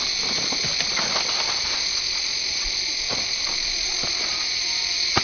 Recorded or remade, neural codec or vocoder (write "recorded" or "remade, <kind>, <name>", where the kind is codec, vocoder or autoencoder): recorded